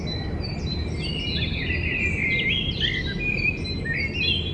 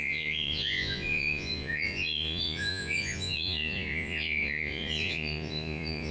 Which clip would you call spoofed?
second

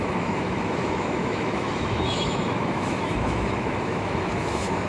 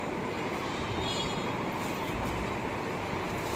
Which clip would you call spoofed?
first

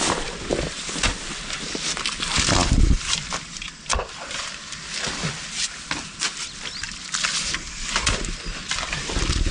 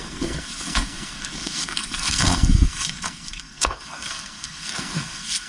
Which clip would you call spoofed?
second